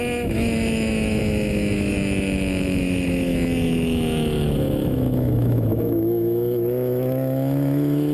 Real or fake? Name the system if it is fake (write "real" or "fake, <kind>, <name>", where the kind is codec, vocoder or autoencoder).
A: fake, autoencoder, DAC-VAE